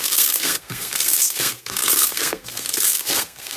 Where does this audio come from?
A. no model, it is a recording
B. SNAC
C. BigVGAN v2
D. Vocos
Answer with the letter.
B